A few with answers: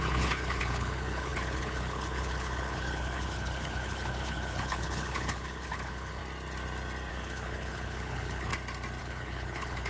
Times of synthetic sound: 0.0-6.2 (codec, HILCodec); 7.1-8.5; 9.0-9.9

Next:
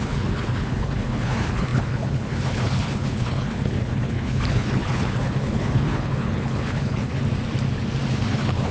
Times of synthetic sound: 0.0-7.2 (codec, HILCodec); 8.1-8.7